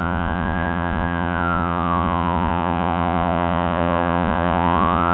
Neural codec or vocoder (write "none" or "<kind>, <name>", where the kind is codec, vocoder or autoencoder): vocoder, Vocos